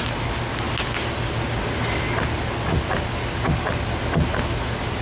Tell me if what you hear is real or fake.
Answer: real